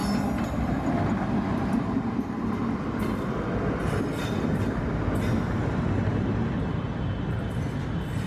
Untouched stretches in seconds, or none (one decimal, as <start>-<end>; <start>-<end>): 0.0-3.8; 4.8-8.3

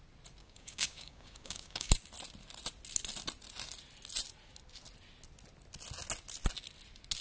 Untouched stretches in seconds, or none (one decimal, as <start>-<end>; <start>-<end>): 0.0-0.4; 1.9-7.2

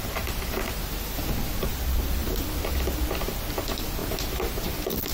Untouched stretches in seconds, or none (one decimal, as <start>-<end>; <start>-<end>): 0.0-1.7; 2.5-4.0

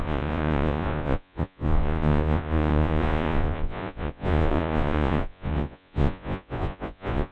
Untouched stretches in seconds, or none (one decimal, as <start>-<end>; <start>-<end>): none

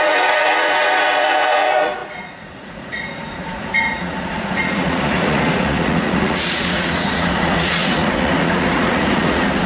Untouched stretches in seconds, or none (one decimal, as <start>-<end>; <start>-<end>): none